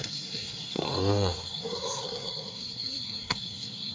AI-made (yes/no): yes